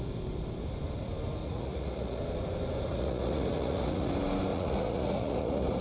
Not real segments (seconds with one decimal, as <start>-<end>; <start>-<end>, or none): 1.4-2.2; 2.9-4.1; 4.5-5.8